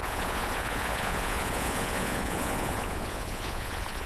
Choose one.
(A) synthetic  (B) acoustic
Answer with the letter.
A